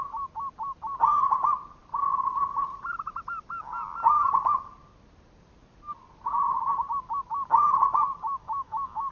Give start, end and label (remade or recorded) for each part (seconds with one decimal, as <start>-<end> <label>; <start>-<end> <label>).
0.0-8.4 recorded; 8.4-9.1 remade